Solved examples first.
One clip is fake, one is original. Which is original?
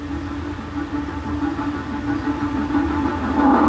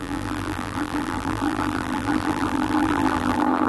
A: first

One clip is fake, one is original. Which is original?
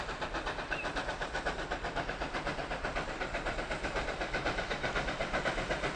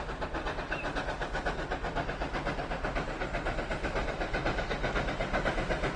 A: second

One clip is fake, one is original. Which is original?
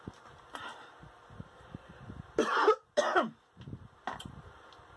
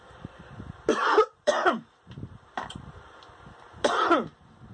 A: first